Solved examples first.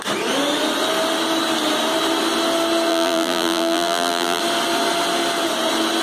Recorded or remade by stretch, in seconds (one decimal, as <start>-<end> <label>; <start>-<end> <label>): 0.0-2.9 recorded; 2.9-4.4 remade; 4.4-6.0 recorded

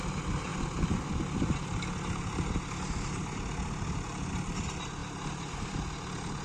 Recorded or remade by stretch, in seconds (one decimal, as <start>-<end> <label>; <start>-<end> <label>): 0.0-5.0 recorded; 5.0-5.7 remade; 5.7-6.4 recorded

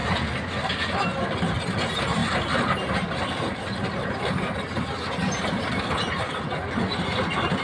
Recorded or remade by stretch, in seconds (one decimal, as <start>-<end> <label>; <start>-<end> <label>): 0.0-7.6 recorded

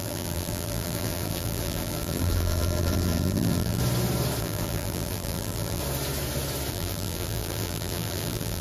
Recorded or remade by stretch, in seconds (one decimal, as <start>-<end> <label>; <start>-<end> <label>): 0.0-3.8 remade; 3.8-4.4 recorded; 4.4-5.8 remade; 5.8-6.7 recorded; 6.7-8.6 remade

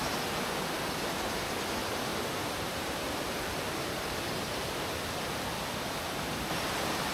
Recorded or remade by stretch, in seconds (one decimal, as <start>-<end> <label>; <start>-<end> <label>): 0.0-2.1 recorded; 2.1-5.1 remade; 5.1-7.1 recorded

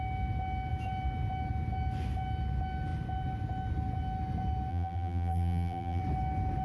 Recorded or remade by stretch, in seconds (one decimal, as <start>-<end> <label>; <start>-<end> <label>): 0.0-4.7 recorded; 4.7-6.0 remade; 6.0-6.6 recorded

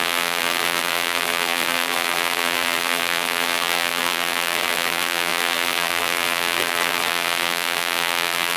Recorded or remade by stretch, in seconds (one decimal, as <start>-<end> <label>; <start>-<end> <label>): 0.0-8.6 remade